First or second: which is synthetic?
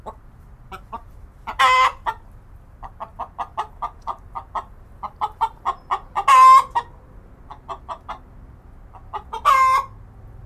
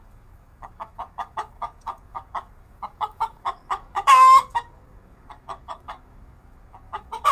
second